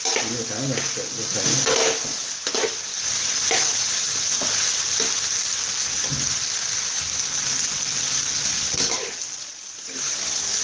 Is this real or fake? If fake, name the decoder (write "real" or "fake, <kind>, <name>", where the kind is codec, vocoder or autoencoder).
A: real